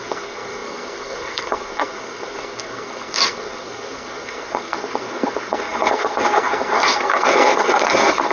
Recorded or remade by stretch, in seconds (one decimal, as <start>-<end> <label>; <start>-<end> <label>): 0.0-8.3 remade